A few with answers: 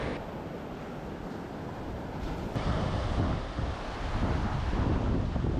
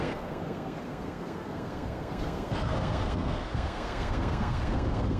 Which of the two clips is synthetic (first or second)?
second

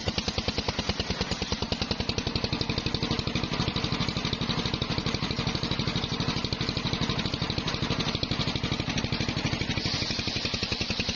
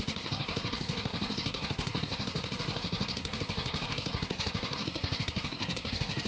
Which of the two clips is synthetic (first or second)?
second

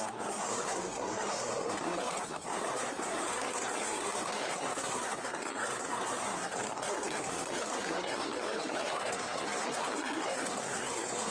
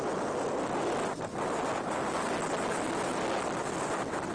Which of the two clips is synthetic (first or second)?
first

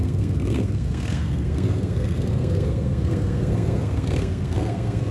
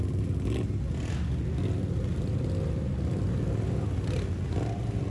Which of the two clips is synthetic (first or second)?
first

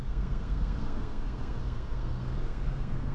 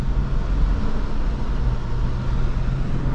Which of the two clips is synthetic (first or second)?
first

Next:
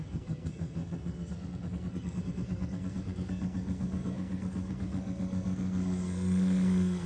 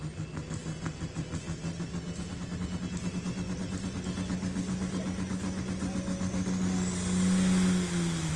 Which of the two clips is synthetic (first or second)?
first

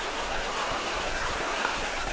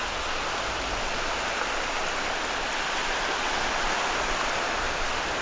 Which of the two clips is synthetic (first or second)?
first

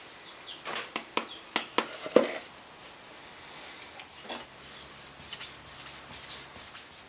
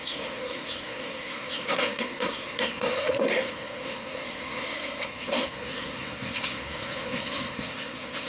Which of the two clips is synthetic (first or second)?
second